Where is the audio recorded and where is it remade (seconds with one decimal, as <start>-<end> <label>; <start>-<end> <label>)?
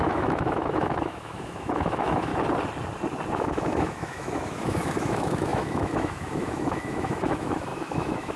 0.0-2.3 remade; 2.3-3.3 recorded; 3.3-8.4 remade